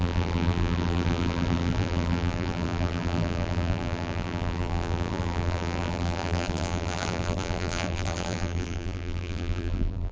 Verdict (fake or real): fake